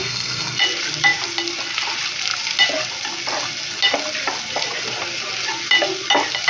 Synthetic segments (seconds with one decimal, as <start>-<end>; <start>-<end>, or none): 0.0-0.6